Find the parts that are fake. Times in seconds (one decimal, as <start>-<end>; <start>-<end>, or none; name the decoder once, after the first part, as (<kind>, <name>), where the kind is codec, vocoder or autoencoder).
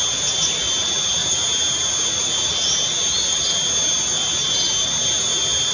none